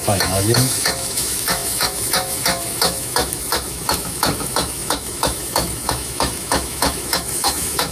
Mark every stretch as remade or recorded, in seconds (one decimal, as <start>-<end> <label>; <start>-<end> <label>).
0.0-7.9 remade